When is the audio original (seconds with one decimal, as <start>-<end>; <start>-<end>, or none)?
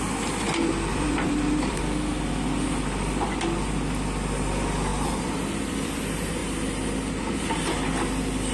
0.0-0.9; 1.8-4.9; 6.0-8.5